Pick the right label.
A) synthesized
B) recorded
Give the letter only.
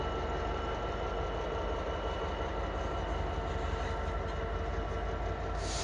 B